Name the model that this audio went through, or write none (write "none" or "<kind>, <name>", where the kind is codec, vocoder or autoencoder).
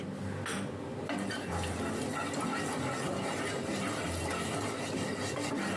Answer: none